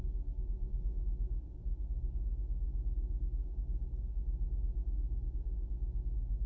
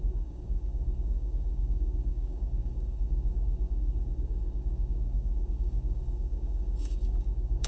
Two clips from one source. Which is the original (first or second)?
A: first